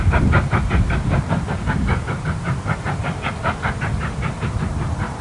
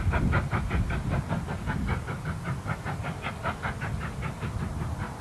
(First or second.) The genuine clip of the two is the second